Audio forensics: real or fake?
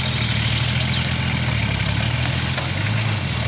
real